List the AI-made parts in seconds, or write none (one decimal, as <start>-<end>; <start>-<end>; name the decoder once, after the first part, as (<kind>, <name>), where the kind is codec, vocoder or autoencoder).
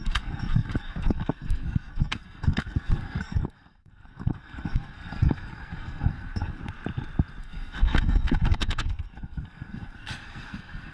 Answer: 0.0-6.6 (codec, SNAC); 7.4-10.9